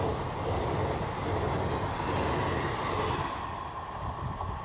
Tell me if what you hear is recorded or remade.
recorded